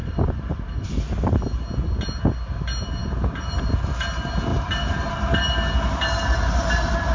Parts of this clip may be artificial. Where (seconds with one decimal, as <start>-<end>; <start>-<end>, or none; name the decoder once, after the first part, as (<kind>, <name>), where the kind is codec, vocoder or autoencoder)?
0.0-0.6 (vocoder, BigVGAN v2); 3.0-3.8; 4.5-5.1